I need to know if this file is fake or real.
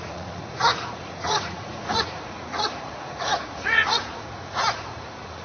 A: fake